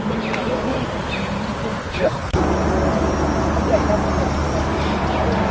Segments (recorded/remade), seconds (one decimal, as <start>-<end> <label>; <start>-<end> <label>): 0.0-1.8 recorded; 1.8-2.4 remade; 2.4-5.5 recorded